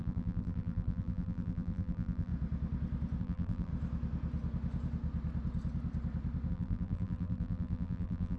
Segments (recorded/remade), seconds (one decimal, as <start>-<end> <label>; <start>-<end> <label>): 0.0-2.3 remade; 2.3-3.2 recorded; 3.2-3.7 remade; 3.7-6.5 recorded; 6.5-8.4 remade